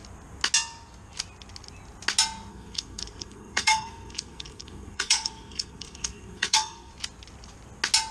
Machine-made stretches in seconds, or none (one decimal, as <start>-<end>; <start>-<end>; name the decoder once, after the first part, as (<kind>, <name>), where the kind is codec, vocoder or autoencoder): 2.5-6.9 (codec, SNAC)

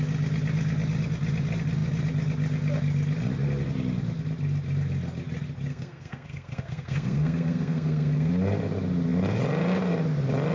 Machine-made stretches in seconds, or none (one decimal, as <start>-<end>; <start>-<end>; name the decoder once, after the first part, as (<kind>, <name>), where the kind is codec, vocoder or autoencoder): 5.7-8.3 (codec, SNAC)

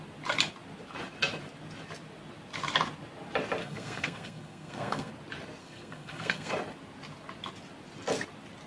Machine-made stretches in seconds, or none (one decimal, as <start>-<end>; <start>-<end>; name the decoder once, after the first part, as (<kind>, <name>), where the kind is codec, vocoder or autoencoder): 3.6-5.1 (codec, SNAC); 5.6-6.5

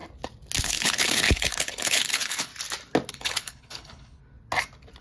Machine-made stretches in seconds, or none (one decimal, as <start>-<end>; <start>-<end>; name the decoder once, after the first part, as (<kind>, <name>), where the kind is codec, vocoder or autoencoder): 0.6-2.5 (codec, HILCodec); 3.1-4.2

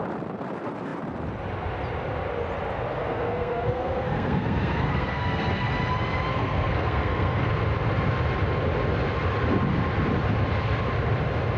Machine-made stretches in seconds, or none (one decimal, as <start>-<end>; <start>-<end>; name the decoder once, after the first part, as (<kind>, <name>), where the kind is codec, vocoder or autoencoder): 3.0-5.7 (codec, SNAC); 6.3-7.5

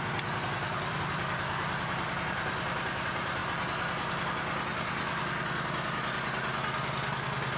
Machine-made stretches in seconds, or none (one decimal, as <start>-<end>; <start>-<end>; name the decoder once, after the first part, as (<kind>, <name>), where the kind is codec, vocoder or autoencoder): 0.0-3.4 (vocoder, BigVGAN v2)

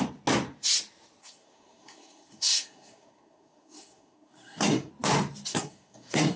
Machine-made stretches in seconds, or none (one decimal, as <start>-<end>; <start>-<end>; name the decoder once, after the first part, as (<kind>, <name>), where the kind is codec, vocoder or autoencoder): 1.2-4.9 (codec, SNAC); 5.5-6.4